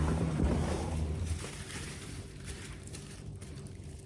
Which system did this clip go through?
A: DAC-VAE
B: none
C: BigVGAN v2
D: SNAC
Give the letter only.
C